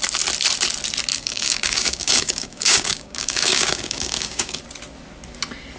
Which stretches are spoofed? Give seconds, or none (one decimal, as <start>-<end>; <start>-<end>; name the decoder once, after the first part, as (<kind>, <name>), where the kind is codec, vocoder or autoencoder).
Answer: 1.1-4.6 (codec, DAC)